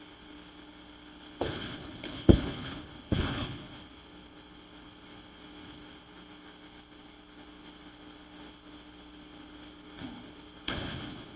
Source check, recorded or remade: remade